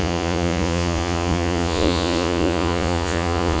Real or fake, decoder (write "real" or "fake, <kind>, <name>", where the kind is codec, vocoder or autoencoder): fake, vocoder, Vocos